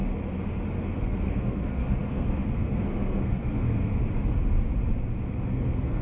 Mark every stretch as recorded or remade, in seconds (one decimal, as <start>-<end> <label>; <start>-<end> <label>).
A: 0.0-1.0 recorded; 1.0-4.0 remade; 4.0-5.3 recorded; 5.3-6.0 remade